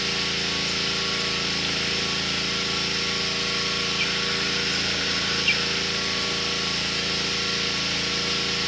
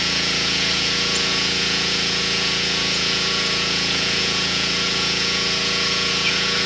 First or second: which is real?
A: first